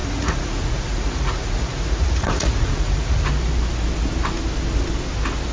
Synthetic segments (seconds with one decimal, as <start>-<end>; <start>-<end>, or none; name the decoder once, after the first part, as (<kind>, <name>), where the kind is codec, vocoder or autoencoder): 0.0-3.3 (vocoder, Vocos)